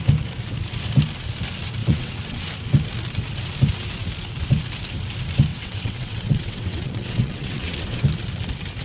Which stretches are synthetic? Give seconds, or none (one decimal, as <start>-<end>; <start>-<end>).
1.8-2.4; 5.5-8.0